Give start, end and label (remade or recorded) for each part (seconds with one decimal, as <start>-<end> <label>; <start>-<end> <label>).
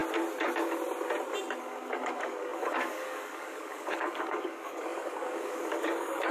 0.0-1.6 recorded; 1.6-6.3 remade